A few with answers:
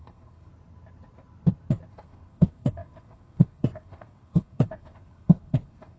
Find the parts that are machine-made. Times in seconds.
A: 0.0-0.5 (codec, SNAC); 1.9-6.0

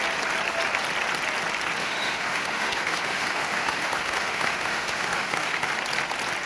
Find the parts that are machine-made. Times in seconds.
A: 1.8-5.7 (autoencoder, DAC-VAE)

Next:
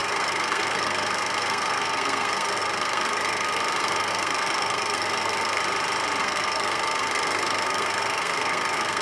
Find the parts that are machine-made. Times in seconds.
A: 0.0-5.6 (codec, SNAC); 6.2-9.0

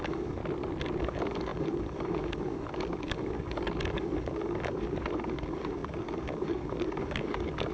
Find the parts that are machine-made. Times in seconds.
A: 0.0-0.4 (codec, DAC); 1.0-7.7

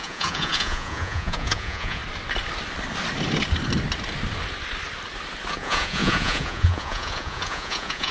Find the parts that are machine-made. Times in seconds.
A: 0.0-2.0 (vocoder, Vocos); 5.5-8.1

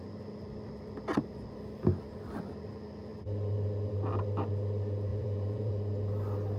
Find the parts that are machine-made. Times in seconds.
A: 5.1-5.7 (vocoder, Vocos)